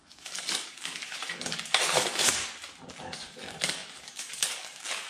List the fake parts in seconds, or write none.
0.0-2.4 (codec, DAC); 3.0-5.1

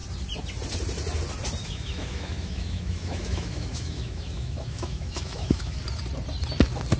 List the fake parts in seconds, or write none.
1.6-5.8 (autoencoder, DAC-VAE)

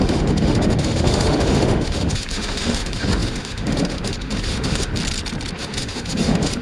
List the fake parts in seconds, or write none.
0.0-4.9 (autoencoder, DAC-VAE); 5.5-6.6

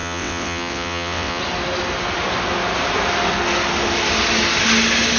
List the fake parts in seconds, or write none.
0.0-1.4 (vocoder, WaveNeXt)

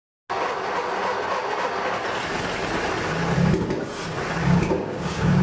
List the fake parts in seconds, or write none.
4.4-5.4 (codec, DAC)

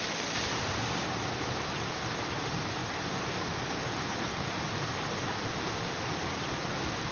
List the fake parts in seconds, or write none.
none

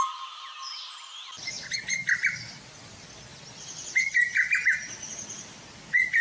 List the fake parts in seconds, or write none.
none